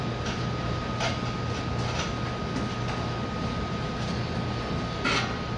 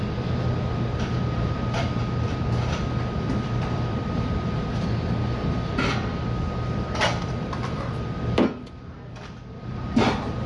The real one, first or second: first